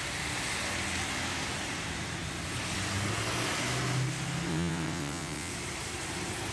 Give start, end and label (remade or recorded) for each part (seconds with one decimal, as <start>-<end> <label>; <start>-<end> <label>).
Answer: 0.0-4.5 recorded; 4.5-5.5 remade; 5.5-6.5 recorded